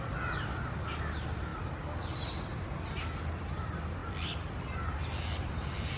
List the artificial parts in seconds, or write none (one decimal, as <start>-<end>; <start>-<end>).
none